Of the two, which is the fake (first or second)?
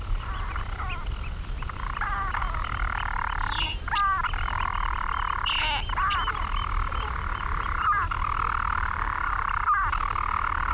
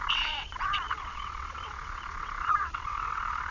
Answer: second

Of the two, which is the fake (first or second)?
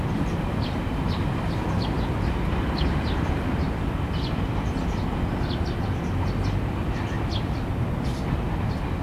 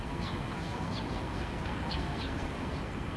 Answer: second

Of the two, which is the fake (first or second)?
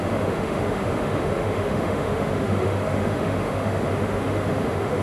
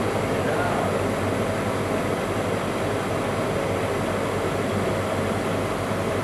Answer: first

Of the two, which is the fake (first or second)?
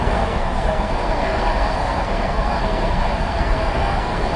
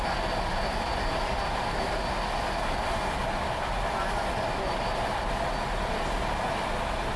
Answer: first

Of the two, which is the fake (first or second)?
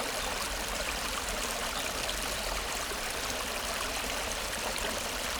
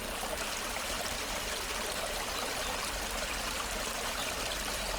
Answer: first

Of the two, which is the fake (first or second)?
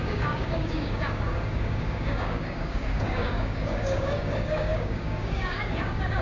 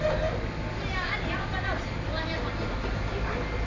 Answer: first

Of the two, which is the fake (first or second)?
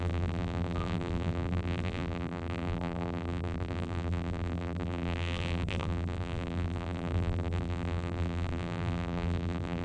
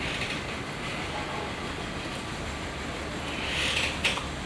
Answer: first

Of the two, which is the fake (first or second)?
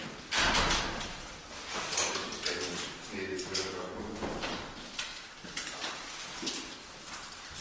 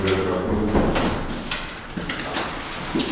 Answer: first